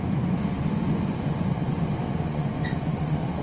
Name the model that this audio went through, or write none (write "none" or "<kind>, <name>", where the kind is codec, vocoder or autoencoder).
vocoder, Vocos